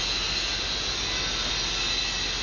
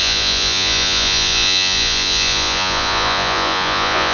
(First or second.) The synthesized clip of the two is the second